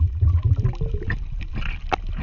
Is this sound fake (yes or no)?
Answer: no